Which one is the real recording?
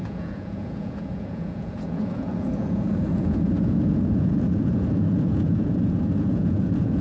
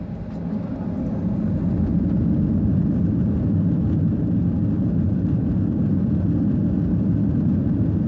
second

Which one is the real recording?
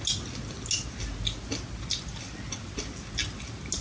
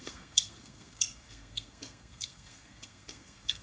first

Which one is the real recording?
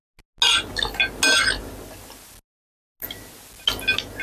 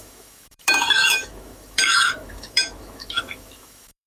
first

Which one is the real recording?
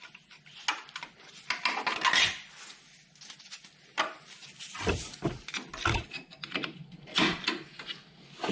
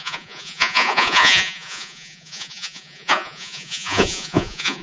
first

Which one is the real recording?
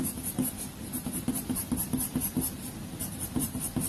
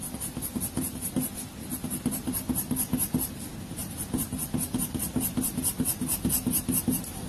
second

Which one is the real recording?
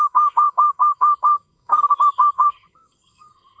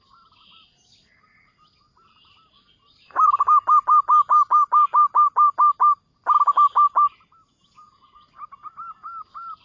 second